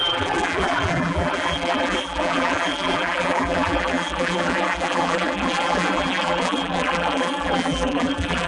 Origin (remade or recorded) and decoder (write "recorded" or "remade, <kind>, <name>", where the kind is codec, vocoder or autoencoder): remade, vocoder, BigVGAN v2